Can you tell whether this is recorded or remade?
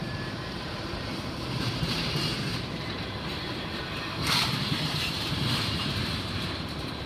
remade